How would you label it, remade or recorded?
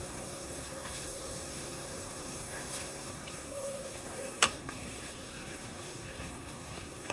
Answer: remade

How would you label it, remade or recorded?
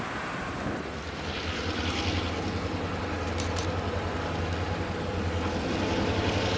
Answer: recorded